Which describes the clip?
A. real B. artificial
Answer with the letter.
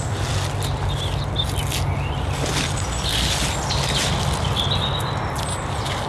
A